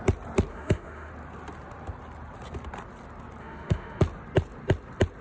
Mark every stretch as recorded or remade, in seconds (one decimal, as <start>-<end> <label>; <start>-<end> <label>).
0.0-0.5 recorded; 0.5-1.1 remade; 1.1-3.4 recorded; 3.4-4.0 remade; 4.0-5.2 recorded